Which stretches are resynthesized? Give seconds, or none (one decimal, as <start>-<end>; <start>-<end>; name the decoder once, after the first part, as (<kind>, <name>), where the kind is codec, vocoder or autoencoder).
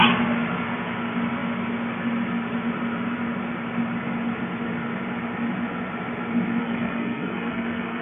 6.6-8.0 (codec, SNAC)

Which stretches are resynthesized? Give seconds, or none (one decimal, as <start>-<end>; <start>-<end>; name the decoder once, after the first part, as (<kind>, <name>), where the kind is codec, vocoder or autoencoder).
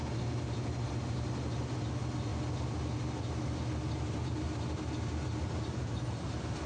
none